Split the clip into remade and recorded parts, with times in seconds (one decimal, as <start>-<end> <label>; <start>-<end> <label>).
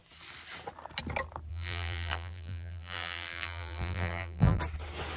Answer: 0.0-1.5 recorded; 1.5-4.6 remade; 4.6-5.2 recorded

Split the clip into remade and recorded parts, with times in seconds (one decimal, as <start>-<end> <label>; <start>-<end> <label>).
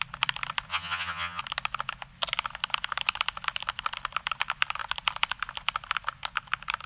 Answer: 0.0-0.7 recorded; 0.7-1.4 remade; 1.4-6.9 recorded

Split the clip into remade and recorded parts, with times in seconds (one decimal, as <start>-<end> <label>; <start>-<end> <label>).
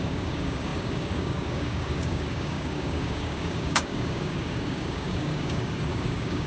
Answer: 0.0-6.5 remade